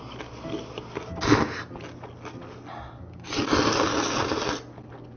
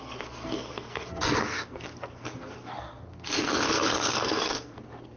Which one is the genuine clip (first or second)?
first